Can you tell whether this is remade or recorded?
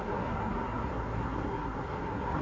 remade